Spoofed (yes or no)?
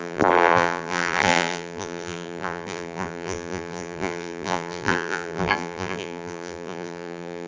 yes